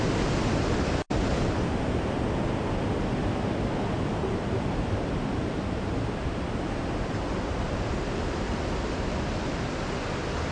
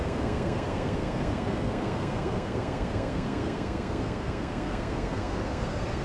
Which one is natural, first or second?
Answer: first